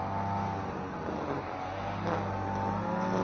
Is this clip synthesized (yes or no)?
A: no